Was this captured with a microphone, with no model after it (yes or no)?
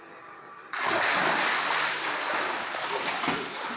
yes